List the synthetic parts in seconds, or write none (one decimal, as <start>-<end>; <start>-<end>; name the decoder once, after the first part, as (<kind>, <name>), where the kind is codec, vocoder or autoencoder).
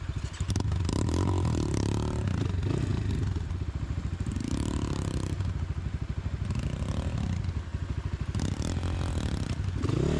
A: none